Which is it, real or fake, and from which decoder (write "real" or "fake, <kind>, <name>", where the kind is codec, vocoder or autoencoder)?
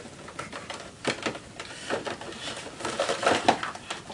real